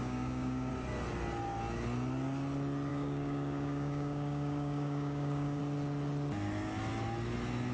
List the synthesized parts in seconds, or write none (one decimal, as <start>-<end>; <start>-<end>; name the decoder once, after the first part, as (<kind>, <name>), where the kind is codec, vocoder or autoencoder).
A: 0.0-0.7 (codec, DAC); 2.9-5.6